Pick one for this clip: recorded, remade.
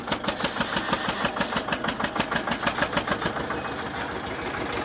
recorded